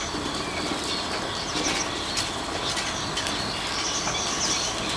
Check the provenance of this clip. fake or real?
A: real